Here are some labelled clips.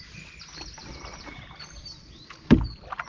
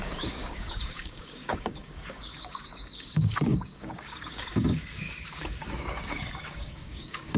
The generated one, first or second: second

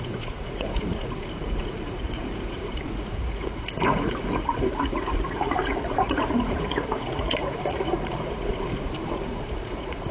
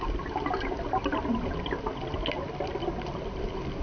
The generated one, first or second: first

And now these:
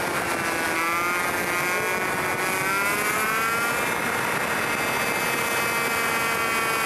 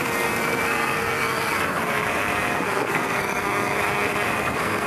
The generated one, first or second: second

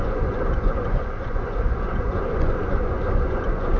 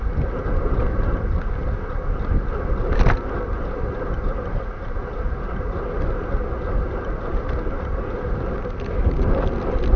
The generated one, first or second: first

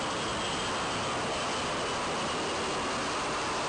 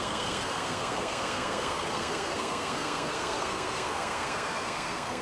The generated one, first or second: second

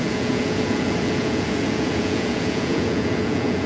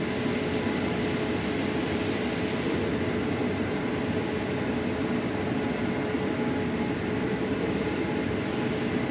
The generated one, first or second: first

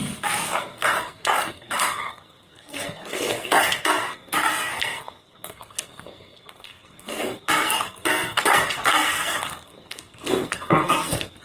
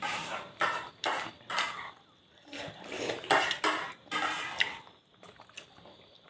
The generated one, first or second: first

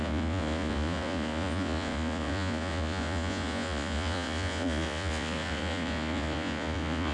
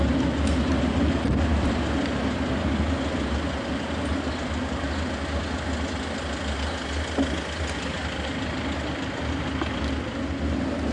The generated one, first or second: first